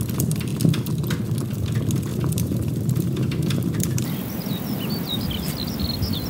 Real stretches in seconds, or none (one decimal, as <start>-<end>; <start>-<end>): 0.0-2.1; 4.2-6.3